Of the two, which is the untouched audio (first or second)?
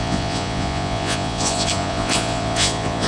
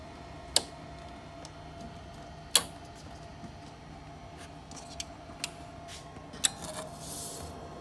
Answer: second